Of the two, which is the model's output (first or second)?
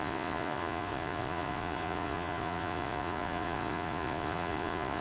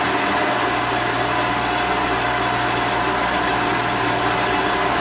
first